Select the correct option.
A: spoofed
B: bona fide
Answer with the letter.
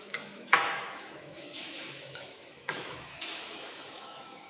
A